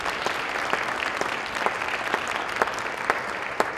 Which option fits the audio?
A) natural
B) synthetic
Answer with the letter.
B